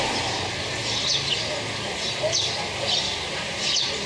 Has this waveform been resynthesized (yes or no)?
no